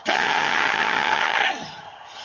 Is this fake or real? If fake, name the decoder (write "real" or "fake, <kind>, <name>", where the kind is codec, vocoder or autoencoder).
fake, vocoder, HiFi-GAN